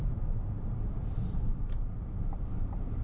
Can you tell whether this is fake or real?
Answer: fake